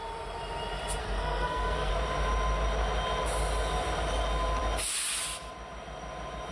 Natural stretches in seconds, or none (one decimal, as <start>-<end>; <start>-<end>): 0.0-1.0; 1.9-6.5